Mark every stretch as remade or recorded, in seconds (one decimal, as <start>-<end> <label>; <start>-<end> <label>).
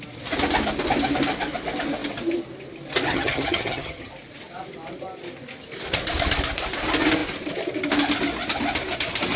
0.0-3.1 recorded; 3.1-4.1 remade; 4.1-9.4 recorded